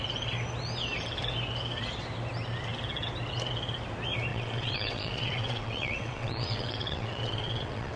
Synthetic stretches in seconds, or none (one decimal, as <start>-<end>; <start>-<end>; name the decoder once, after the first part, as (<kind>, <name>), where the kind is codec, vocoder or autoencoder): 4.3-8.0 (vocoder, WaveNeXt)